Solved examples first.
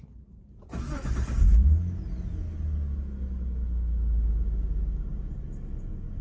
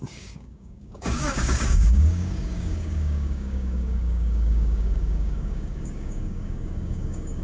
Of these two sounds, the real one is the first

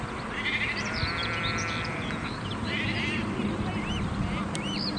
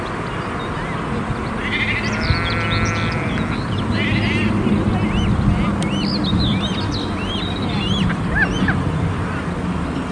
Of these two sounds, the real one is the second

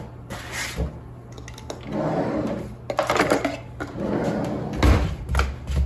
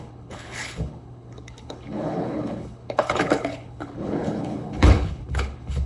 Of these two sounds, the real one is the first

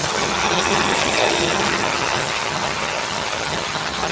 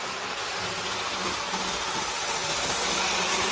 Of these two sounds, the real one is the second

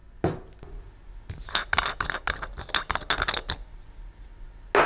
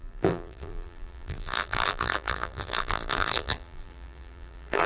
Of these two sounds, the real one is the first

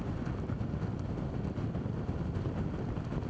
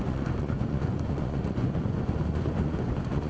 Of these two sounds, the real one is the first